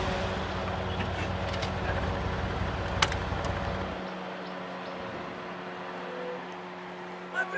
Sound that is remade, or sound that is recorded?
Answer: recorded